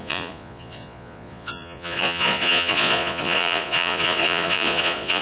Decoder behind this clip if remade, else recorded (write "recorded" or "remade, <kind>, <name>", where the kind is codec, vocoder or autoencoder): remade, vocoder, Vocos